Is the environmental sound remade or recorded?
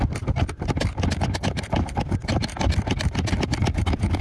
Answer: recorded